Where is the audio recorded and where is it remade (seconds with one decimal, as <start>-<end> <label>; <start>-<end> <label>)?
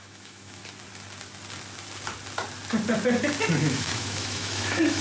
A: 0.0-0.6 remade; 0.6-3.6 recorded; 3.6-5.0 remade